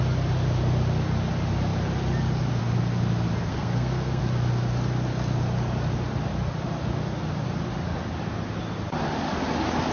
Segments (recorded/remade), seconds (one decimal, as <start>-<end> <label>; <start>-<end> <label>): 0.0-3.5 recorded; 3.5-4.2 remade; 4.2-9.9 recorded